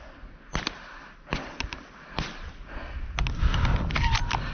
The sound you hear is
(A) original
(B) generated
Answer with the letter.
A